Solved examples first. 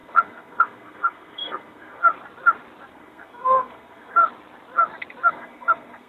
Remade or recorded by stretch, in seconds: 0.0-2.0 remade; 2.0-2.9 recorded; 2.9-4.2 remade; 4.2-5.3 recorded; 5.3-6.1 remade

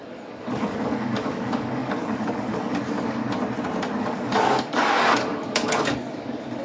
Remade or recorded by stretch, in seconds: 0.0-3.2 remade; 3.2-4.0 recorded; 4.0-6.6 remade

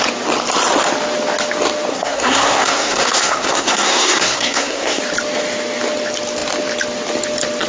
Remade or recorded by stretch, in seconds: 0.0-1.9 recorded; 1.9-5.0 remade; 5.0-7.7 recorded

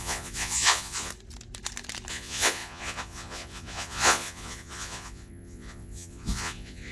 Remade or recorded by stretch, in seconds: 0.0-1.1 remade; 1.1-2.1 recorded; 2.1-6.9 remade

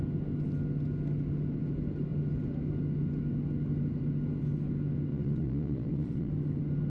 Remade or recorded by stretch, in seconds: 0.0-5.1 recorded; 5.1-6.3 remade; 6.3-6.9 recorded

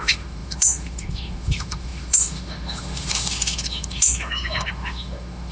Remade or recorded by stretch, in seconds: 0.0-5.5 remade

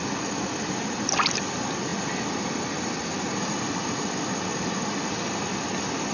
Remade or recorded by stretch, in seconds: 0.0-6.1 recorded

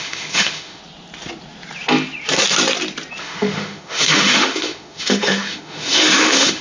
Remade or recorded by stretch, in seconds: 0.0-0.8 remade; 0.8-3.2 recorded; 3.2-6.6 remade